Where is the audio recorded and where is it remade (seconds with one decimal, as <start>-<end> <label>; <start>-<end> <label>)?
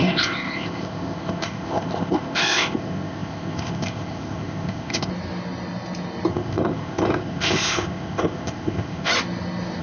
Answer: 0.0-5.1 remade; 5.1-6.3 recorded; 6.3-9.1 remade; 9.1-9.8 recorded